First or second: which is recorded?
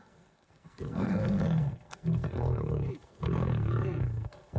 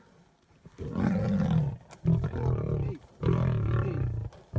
second